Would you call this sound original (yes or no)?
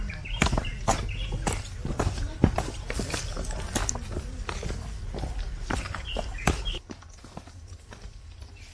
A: yes